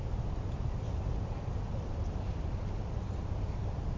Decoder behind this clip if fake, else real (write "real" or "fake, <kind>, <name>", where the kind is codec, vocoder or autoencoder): real